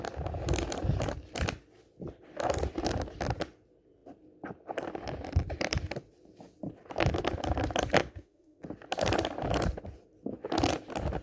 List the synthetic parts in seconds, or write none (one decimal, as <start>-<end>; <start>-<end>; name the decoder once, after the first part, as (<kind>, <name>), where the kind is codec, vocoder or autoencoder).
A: 8.0-8.6 (autoencoder, DAC-VAE)